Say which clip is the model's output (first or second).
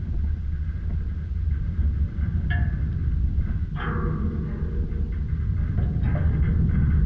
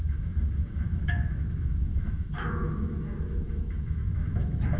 second